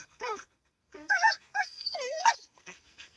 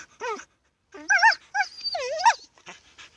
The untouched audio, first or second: second